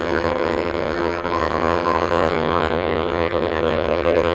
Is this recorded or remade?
remade